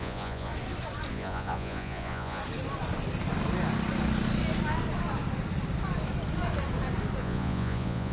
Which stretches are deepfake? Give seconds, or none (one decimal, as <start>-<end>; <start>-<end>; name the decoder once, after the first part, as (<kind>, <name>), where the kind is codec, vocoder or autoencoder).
0.0-0.5 (vocoder, Vocos); 1.1-2.4; 7.2-8.1